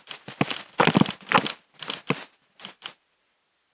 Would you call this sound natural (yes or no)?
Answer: yes